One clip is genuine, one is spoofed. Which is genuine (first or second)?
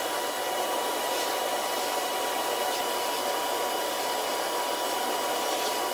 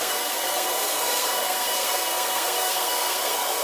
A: first